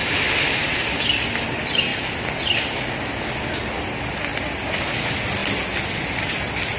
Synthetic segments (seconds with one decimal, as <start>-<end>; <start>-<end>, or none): none